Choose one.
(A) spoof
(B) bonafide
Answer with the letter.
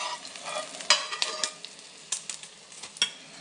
B